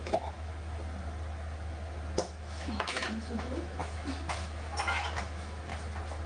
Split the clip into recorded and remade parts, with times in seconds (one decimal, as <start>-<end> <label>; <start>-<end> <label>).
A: 0.0-0.5 remade; 0.5-2.3 recorded; 2.3-5.7 remade; 5.7-6.3 recorded